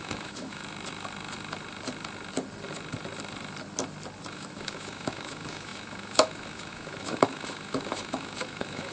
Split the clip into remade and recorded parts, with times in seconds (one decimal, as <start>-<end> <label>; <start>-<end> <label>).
0.0-0.6 remade; 0.6-4.3 recorded; 4.3-8.9 remade